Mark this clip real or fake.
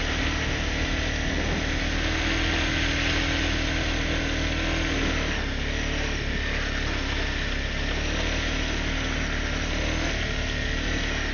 real